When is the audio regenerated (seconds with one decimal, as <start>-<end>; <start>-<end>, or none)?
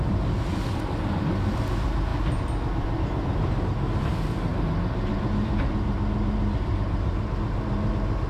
none